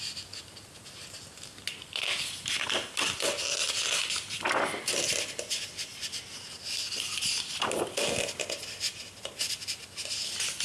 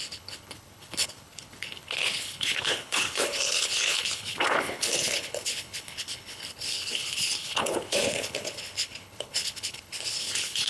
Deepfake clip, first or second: second